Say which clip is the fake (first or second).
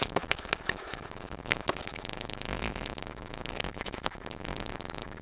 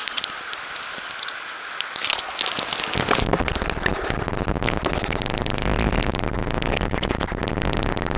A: first